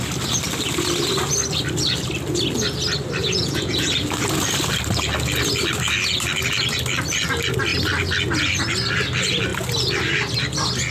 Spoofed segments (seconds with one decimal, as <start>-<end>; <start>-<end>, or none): 3.2-3.9